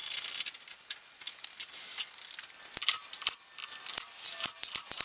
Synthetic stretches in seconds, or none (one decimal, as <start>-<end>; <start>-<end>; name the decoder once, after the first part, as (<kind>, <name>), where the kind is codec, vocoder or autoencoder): none